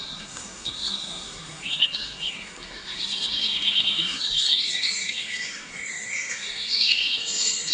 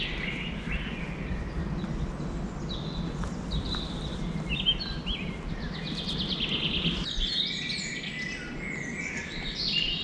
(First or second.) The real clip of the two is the second